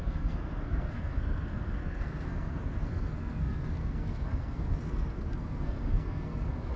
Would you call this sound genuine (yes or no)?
no